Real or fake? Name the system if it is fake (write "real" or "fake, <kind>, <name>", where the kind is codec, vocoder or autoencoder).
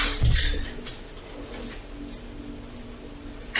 real